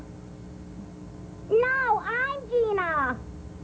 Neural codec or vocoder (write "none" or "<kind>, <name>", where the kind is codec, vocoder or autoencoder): none